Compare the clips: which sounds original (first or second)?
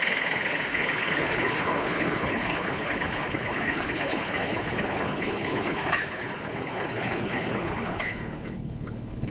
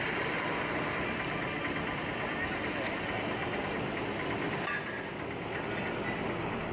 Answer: second